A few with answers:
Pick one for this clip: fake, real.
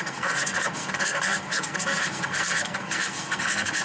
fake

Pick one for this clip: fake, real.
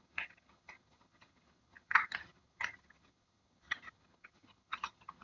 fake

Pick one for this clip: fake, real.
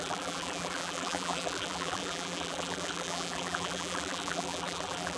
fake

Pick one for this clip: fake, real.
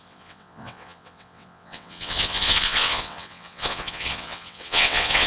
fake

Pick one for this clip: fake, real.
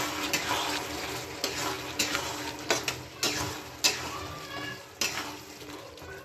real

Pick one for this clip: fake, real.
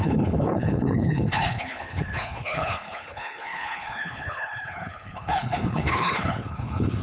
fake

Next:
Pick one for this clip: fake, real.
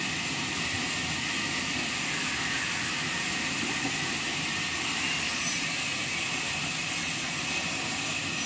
real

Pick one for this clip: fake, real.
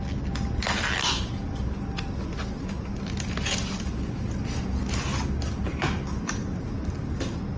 real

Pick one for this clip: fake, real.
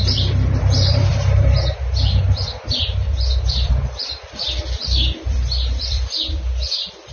fake